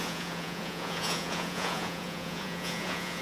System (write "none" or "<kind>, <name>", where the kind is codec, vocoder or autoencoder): vocoder, Vocos